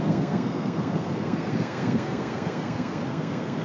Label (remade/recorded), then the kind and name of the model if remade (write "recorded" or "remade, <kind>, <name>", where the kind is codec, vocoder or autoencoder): remade, codec, SNAC